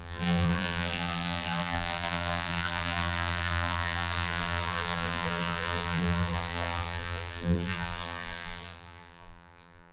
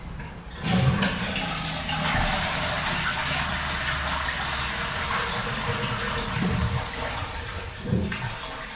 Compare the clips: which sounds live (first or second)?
second